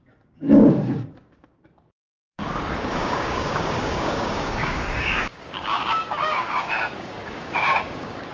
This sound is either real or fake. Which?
fake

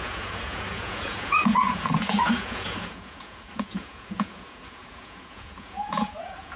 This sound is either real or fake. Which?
fake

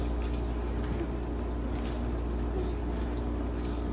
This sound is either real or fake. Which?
real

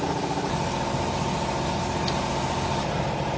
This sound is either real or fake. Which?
real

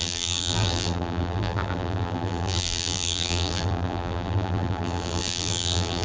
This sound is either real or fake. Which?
fake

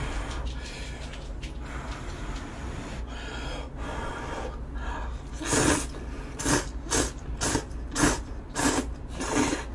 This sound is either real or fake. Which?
real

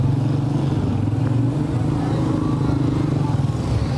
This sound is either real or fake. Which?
real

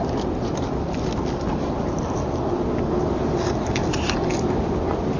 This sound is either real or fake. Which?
real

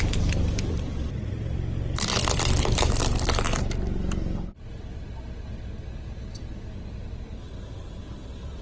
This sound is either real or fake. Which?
fake